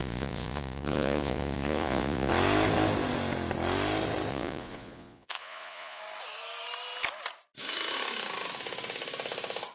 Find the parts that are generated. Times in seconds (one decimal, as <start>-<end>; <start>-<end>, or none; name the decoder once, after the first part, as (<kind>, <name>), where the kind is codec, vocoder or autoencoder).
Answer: 0.0-2.3 (vocoder, Vocos); 4.3-6.0